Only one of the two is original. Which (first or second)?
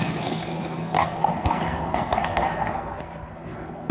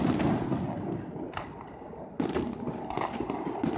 second